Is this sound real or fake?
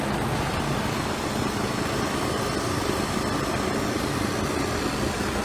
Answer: real